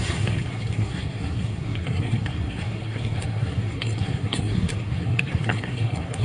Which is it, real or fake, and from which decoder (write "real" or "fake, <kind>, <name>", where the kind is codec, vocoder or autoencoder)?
fake, codec, SNAC